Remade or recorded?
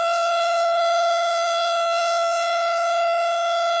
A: recorded